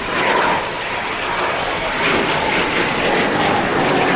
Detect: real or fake real